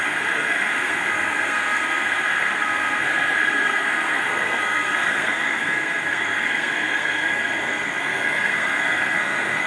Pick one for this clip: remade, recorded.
remade